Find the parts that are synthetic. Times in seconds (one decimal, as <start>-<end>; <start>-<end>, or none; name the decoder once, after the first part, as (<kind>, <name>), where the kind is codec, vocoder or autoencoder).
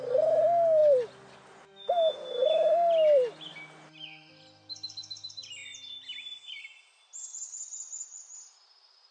none